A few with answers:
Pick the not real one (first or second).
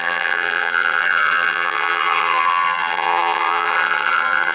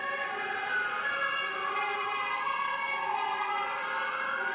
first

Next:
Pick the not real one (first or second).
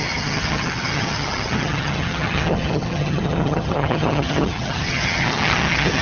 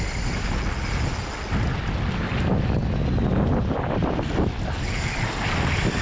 first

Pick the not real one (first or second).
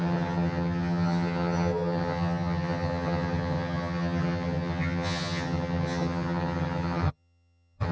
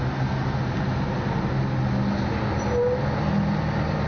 first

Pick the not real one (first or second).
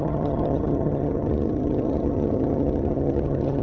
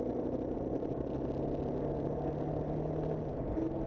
first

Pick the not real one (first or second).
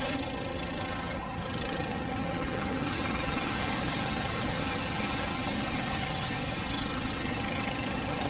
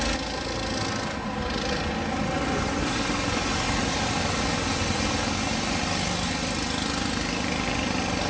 first